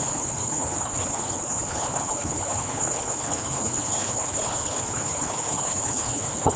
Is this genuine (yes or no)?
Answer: no